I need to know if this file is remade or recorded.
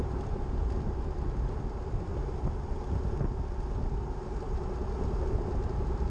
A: recorded